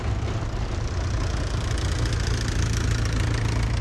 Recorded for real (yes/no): yes